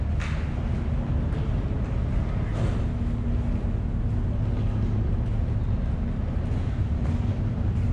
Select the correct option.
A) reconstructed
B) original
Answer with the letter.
B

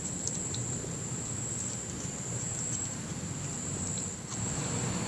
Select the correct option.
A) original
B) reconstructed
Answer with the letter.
B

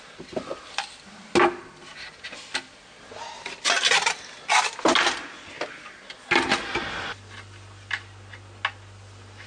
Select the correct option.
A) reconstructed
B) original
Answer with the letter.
B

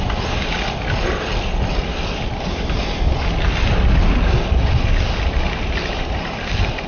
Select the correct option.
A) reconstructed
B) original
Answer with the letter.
B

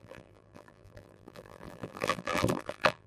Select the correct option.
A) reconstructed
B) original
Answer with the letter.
A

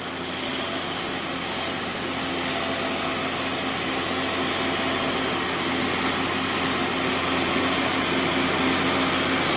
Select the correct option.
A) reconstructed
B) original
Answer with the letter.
B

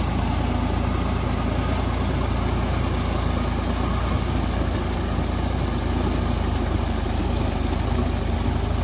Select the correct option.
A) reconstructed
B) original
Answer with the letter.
B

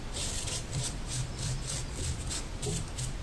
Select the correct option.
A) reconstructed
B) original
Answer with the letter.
A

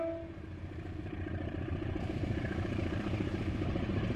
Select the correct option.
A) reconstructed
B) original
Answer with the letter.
A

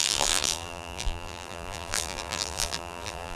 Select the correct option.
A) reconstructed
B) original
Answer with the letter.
A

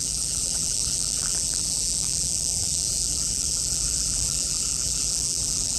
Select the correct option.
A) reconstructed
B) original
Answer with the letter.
A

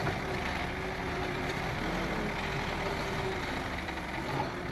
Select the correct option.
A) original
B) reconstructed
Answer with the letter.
A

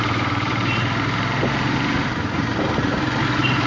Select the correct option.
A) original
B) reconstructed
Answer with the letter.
B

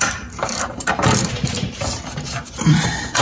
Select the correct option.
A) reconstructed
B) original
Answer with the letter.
A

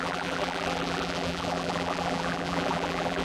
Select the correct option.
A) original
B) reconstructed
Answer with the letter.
B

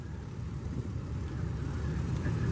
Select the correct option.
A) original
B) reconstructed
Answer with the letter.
B